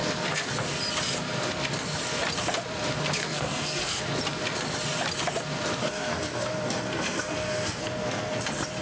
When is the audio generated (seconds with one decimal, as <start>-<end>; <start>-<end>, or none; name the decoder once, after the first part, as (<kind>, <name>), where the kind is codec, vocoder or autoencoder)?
0.0-0.5 (codec, SNAC); 3.2-4.0; 5.8-8.4

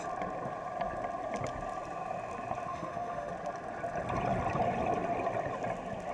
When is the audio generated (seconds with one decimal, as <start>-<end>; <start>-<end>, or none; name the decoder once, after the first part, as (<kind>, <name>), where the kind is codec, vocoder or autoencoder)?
2.7-3.3 (autoencoder, DAC-VAE)

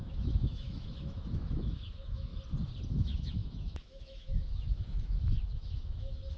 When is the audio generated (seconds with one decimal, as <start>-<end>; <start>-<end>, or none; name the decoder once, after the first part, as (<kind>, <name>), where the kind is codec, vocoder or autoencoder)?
0.0-2.3 (autoencoder, DAC-VAE); 2.9-6.4

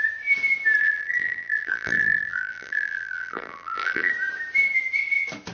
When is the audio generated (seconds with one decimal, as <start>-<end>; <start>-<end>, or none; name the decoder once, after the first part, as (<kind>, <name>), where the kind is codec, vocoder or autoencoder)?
0.8-4.1 (vocoder, BigVGAN v2)

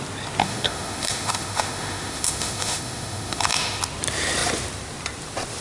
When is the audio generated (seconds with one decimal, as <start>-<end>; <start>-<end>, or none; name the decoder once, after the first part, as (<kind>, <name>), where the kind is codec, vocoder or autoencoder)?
0.4-3.8 (autoencoder, DAC-VAE)